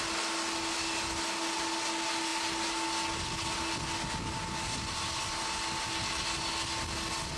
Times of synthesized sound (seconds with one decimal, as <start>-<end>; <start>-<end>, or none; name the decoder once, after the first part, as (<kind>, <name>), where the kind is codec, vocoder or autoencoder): none